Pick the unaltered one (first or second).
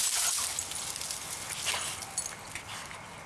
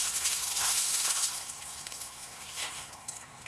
first